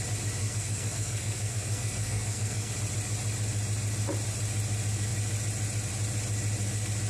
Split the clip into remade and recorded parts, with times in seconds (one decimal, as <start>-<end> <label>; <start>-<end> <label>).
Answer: 0.0-0.4 recorded; 0.4-2.7 remade; 2.7-7.1 recorded